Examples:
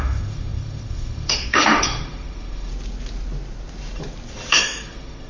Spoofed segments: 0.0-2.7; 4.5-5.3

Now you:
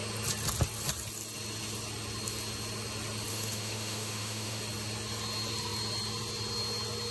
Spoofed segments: 3.3-4.6